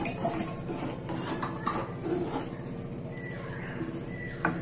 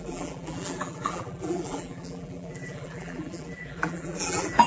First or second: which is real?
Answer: first